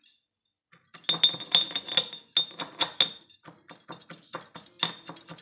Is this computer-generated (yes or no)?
no